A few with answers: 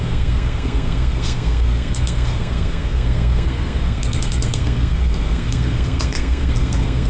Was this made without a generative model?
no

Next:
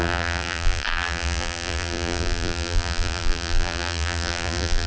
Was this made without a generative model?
no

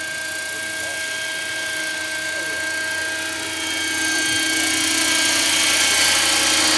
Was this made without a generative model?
yes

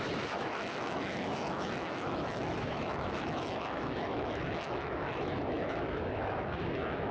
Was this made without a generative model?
no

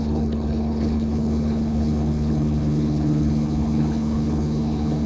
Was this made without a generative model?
no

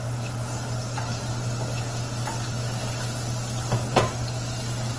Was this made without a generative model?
yes